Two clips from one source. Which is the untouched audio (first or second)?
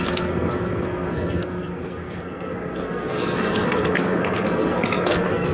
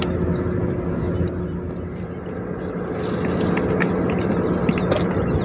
second